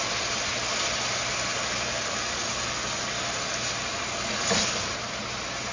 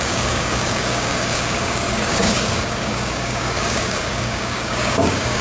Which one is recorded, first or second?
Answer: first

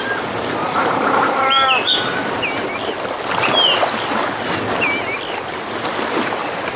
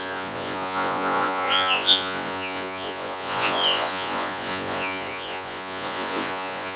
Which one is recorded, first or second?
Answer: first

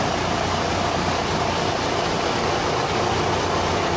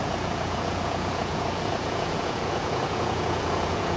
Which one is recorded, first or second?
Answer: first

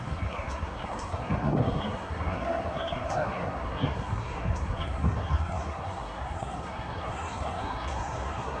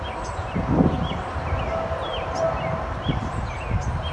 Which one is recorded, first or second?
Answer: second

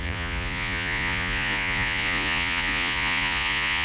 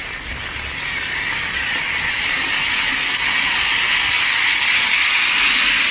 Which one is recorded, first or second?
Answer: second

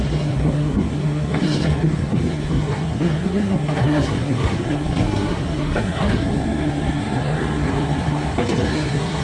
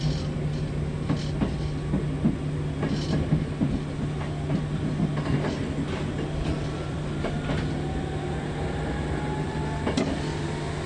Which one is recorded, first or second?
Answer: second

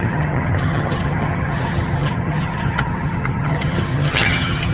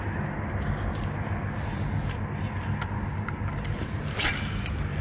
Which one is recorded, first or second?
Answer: second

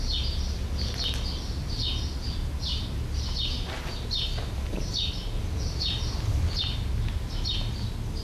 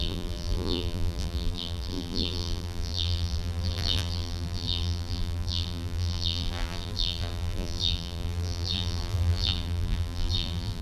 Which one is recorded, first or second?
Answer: first